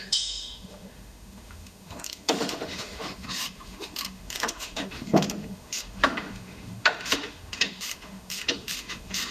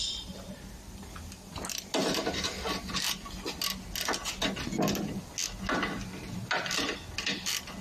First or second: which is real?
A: second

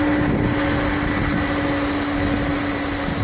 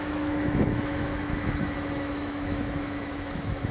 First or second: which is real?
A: first